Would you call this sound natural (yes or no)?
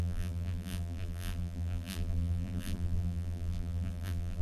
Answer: no